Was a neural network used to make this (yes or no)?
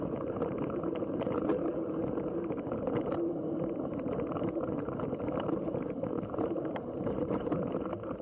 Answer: yes